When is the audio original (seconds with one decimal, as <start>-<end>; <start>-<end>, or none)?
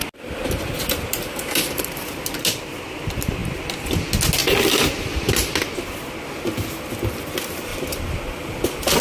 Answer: 0.0-4.4; 5.5-7.7; 8.2-9.0